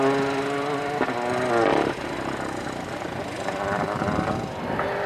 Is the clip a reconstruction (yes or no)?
no